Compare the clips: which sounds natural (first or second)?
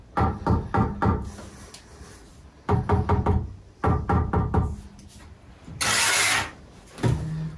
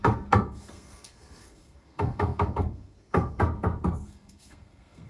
first